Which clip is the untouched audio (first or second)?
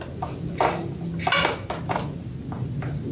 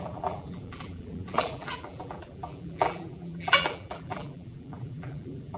first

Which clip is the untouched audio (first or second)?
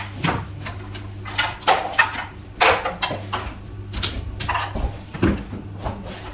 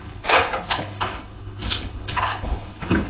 first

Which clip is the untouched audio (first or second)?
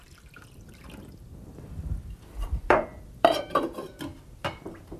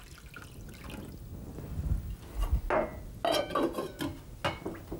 second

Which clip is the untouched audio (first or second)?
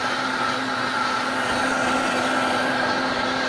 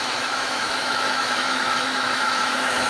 first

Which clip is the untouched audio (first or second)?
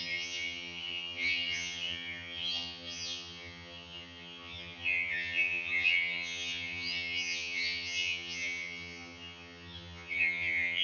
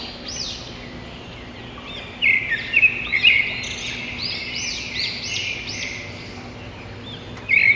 second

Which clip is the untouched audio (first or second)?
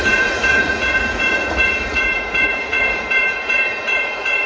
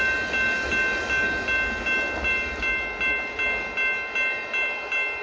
second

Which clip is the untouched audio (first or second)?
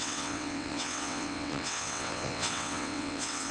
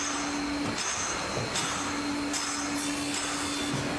second